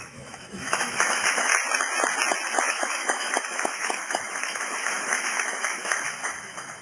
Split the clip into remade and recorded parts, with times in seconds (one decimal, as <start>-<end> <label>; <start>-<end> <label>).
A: 0.0-1.5 remade; 1.5-2.6 recorded; 2.6-6.8 remade